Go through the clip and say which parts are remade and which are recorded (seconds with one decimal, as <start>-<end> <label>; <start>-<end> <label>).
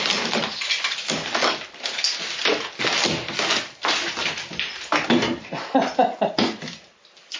0.0-7.4 recorded